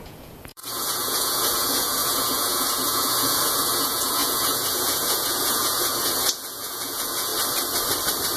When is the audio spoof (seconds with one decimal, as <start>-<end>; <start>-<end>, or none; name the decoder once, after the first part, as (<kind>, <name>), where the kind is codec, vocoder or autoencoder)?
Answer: 0.0-7.3 (vocoder, Vocos)